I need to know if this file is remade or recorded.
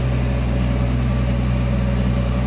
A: recorded